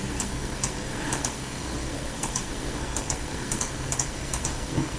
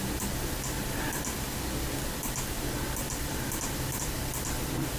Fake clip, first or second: first